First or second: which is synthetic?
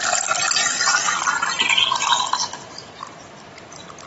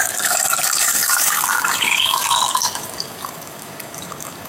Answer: second